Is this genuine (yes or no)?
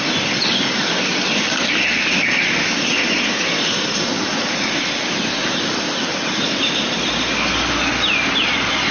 yes